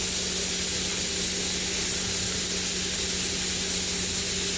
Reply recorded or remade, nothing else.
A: recorded